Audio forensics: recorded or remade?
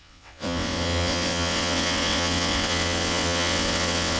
remade